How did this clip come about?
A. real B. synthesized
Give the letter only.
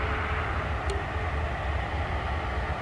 A